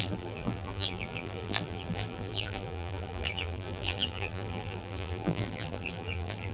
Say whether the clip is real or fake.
fake